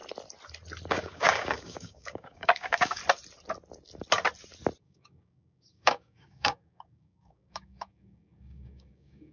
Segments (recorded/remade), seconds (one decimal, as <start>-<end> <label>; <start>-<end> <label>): 0.0-0.9 recorded; 0.9-3.0 remade; 3.0-4.8 recorded; 4.8-9.3 remade